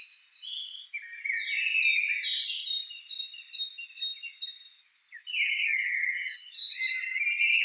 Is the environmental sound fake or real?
real